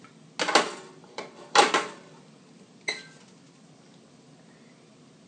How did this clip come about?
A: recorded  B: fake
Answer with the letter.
A